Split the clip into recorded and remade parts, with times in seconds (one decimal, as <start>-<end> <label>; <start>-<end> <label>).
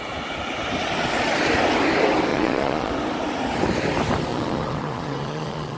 0.0-2.3 recorded; 2.3-2.9 remade; 2.9-4.3 recorded; 4.3-5.8 remade